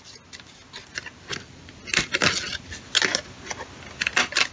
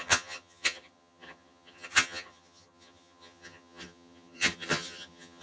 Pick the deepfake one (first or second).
second